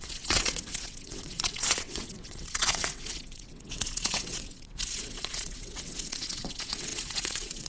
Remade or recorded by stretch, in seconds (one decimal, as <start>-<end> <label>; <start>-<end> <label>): 0.0-7.7 remade